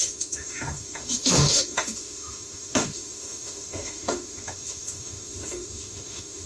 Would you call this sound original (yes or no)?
no